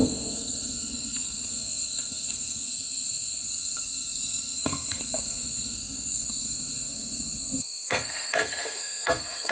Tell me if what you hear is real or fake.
fake